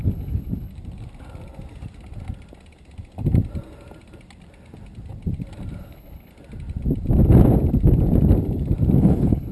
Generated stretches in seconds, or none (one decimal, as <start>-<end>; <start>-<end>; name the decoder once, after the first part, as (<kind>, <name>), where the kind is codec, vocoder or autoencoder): 0.0-0.7 (codec, HILCodec); 5.8-6.3; 9.0-9.5